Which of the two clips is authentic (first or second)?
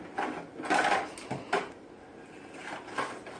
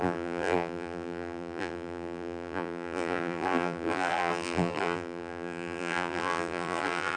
first